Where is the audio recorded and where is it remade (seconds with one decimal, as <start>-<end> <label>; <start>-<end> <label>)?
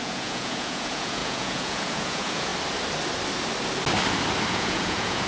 0.0-2.5 remade; 2.5-4.5 recorded; 4.5-5.3 remade